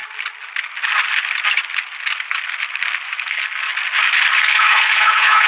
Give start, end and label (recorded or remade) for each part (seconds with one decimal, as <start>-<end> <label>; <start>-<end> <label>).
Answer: 0.0-3.3 recorded; 3.3-3.7 remade; 3.7-4.3 recorded; 4.3-5.5 remade